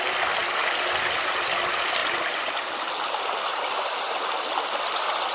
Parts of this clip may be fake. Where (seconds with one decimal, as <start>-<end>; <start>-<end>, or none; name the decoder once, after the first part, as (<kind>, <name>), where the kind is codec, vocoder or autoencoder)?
none